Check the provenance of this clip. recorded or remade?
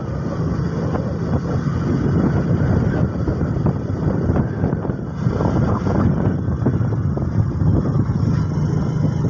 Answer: recorded